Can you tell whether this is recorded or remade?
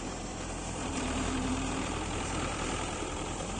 remade